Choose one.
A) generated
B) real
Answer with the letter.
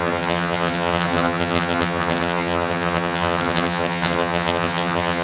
A